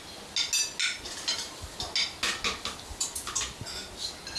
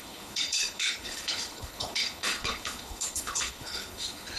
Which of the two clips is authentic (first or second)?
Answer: first